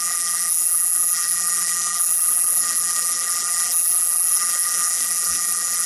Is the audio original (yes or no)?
no